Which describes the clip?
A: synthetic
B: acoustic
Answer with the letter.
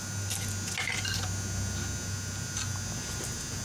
B